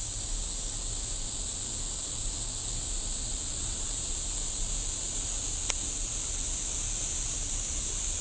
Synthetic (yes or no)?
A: no